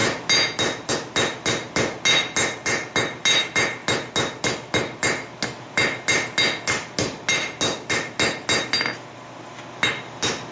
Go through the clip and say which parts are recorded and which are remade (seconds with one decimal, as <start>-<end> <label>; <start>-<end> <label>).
0.0-10.5 recorded